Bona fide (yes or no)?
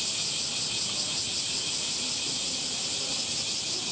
yes